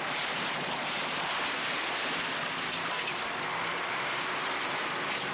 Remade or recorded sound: remade